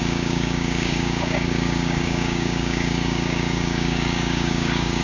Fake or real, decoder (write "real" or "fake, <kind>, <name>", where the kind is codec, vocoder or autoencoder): fake, codec, DAC